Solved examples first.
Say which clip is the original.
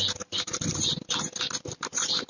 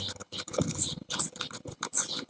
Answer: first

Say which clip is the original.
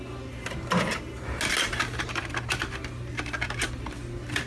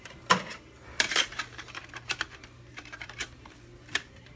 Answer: first